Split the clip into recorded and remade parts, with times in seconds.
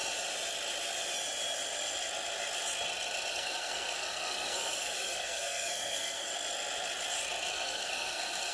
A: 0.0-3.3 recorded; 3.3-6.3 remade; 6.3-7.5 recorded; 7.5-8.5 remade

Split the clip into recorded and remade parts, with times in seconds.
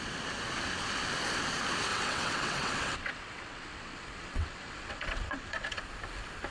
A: 0.0-1.9 recorded; 1.9-5.8 remade; 5.8-6.5 recorded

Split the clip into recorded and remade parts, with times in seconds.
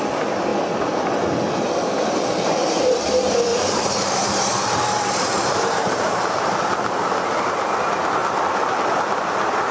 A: 0.0-3.5 recorded; 3.5-7.5 remade; 7.5-9.7 recorded